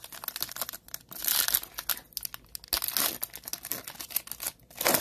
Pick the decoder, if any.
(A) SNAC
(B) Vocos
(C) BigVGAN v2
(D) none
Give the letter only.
D